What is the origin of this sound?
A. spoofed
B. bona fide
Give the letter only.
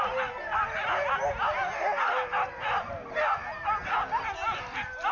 B